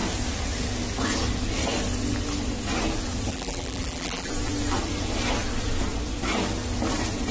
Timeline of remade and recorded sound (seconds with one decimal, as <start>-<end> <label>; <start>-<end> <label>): 0.0-3.3 recorded; 3.3-4.3 remade; 4.3-7.3 recorded